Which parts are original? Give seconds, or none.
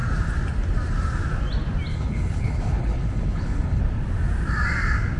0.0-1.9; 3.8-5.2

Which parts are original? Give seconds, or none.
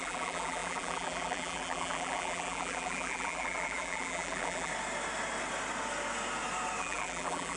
4.7-6.8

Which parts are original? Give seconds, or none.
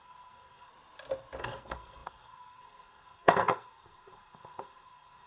0.7-1.4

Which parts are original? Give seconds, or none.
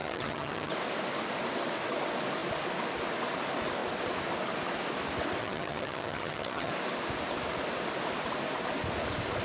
0.7-5.4; 6.7-9.4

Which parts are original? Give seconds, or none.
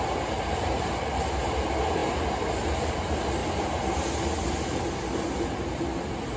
0.0-6.4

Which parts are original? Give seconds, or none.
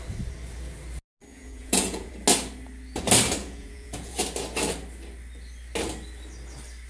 0.0-1.3; 2.1-3.4; 4.2-6.9